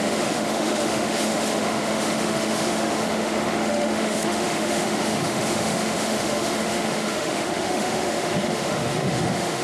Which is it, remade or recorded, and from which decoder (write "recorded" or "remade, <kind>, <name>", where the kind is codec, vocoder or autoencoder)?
remade, autoencoder, DAC-VAE